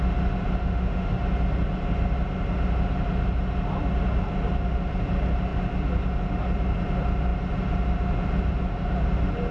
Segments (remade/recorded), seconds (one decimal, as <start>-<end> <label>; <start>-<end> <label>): 0.0-0.6 recorded; 0.6-1.2 remade; 1.2-9.5 recorded